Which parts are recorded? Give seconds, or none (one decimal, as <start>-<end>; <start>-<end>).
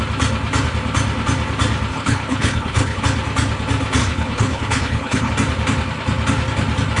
0.0-1.9; 3.0-4.0; 5.3-7.0